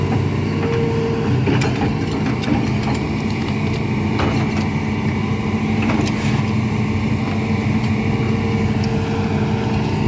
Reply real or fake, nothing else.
real